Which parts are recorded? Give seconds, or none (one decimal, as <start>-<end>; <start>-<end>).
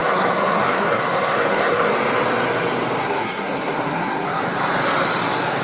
1.9-3.0; 4.4-5.6